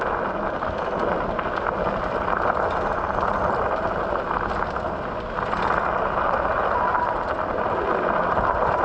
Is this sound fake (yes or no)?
no